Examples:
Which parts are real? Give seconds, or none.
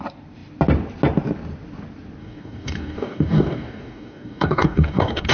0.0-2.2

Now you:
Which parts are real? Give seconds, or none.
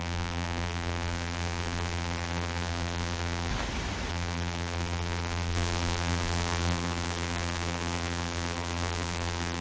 3.5-4.1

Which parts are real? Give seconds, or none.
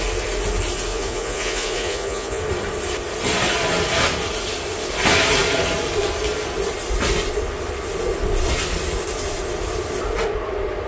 0.0-0.9; 2.4-10.9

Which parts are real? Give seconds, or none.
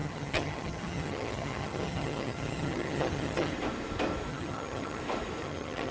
3.5-4.3; 5.0-5.4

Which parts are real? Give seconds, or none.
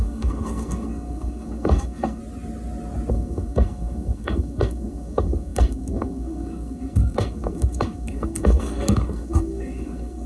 2.2-3.1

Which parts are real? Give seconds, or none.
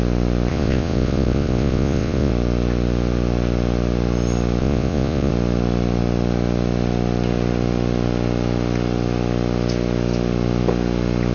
0.0-0.5; 2.3-4.6; 5.3-11.3